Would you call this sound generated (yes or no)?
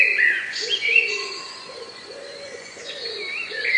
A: yes